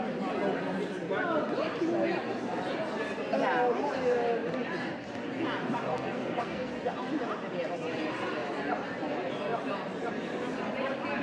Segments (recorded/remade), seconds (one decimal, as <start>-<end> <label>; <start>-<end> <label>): 0.0-5.9 recorded; 5.9-6.7 remade; 6.7-11.2 recorded